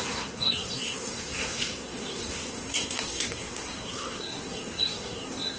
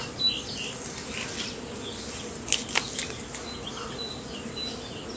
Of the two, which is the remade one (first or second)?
first